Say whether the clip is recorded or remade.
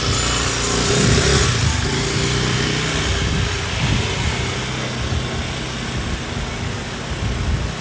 recorded